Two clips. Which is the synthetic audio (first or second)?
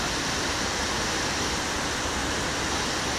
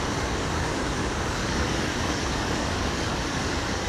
second